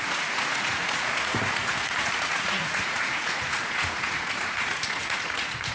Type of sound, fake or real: fake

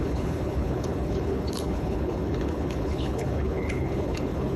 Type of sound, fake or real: fake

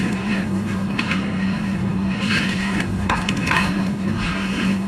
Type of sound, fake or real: fake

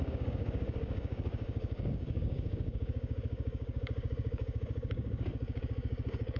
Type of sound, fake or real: fake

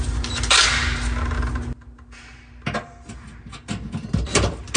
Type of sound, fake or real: real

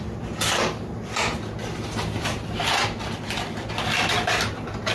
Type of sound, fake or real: real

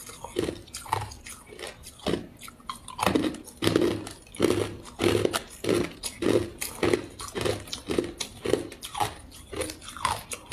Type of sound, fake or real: real